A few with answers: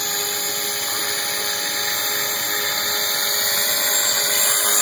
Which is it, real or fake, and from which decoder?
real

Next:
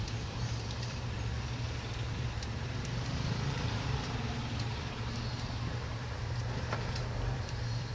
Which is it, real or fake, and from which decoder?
fake, vocoder, BigVGAN v2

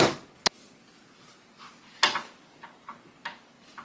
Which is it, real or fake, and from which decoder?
real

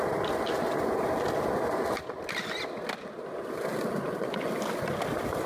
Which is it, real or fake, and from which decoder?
real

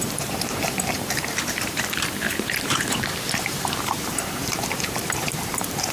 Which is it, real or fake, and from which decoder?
fake, vocoder, BigVGAN v2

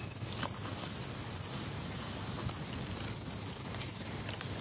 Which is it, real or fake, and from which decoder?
real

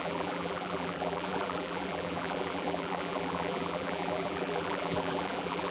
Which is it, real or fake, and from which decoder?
fake, vocoder, BigVGAN v2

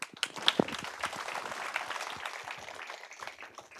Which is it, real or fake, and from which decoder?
real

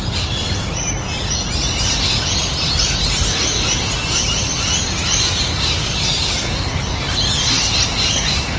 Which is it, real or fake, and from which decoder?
real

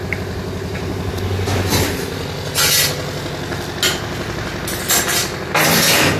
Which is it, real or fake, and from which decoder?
real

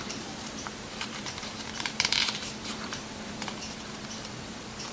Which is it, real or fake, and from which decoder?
fake, vocoder, BigVGAN v2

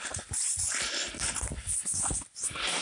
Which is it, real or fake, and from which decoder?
real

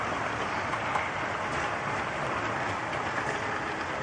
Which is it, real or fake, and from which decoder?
real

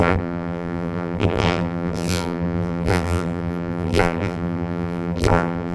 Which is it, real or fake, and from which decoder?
fake, vocoder, BigVGAN v2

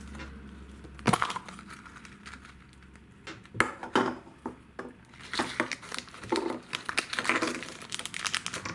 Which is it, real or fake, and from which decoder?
real